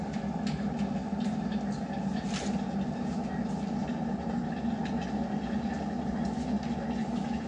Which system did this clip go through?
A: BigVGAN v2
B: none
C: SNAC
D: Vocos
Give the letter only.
B